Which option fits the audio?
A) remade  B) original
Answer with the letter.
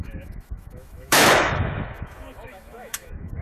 A